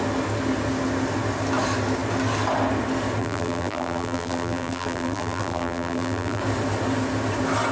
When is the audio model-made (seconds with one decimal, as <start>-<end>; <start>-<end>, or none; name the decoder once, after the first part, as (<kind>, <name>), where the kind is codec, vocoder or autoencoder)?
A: 3.2-6.4 (vocoder, BigVGAN v2)